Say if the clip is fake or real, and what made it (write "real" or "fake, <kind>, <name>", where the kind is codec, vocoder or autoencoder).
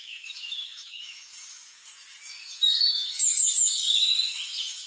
fake, autoencoder, DAC-VAE